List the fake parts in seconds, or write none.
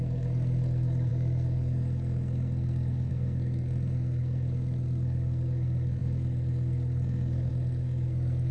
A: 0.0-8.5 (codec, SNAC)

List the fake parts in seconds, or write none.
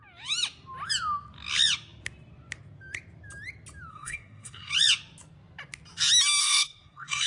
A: 3.9-4.7 (codec, SNAC); 6.4-7.3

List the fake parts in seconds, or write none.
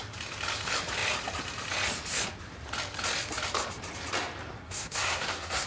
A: 4.6-5.7 (codec, SNAC)